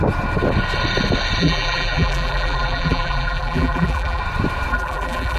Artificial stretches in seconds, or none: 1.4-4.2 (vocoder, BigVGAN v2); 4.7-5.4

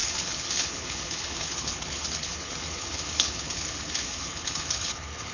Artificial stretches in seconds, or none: 0.0-5.3 (codec, HILCodec)

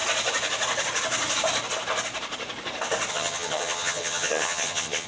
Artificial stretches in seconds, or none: 3.1-5.1 (vocoder, HiFi-GAN)

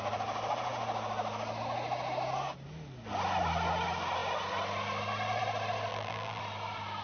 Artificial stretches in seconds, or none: 5.9-6.4 (vocoder, BigVGAN v2)

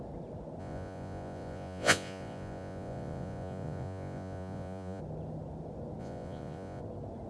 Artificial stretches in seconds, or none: 0.6-5.0 (vocoder, Vocos); 6.0-6.8

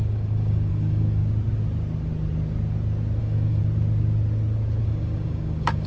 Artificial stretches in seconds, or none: 0.0-1.2 (codec, DAC); 3.2-3.6; 4.8-5.9